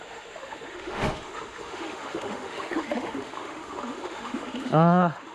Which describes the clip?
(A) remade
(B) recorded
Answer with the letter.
A